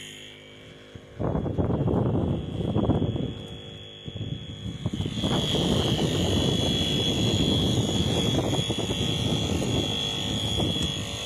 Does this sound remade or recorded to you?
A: recorded